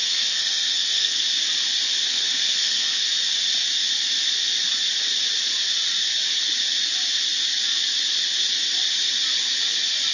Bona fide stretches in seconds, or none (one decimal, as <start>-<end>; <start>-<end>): 1.2-2.1; 3.0-10.1